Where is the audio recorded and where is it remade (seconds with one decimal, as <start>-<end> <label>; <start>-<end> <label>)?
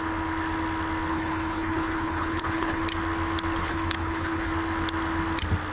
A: 0.0-1.1 recorded; 1.1-2.8 remade; 2.8-3.6 recorded; 3.6-4.5 remade; 4.5-5.7 recorded